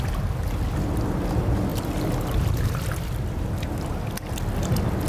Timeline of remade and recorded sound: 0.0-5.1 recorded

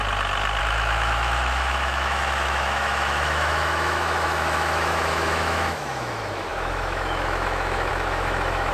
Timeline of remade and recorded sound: 0.0-0.6 recorded; 0.6-8.7 remade

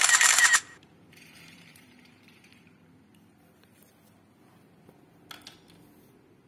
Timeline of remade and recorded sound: 0.0-3.9 remade; 3.9-6.5 recorded